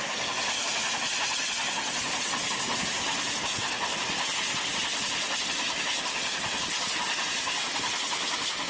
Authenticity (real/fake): real